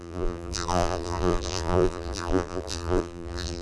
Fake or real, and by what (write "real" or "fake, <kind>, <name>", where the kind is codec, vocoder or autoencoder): fake, vocoder, BigVGAN v2